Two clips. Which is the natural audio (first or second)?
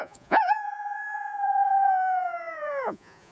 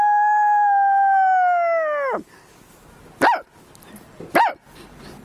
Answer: second